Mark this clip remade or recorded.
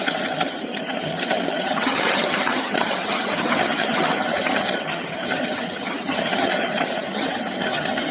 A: remade